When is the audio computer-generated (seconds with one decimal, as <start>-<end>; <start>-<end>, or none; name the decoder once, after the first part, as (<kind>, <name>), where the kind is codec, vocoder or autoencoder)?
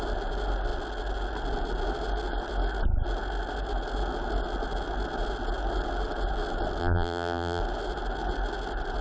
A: 6.8-7.6 (vocoder, BigVGAN v2)